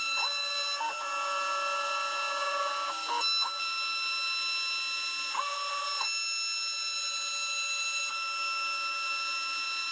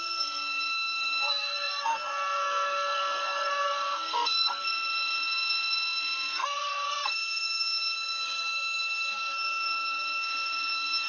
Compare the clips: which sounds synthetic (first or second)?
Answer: second